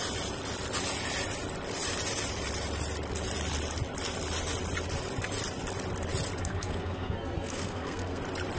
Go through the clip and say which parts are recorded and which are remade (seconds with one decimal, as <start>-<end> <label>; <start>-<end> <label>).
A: 0.0-6.4 recorded; 6.4-8.2 remade; 8.2-8.6 recorded